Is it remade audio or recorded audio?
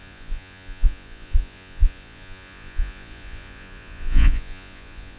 remade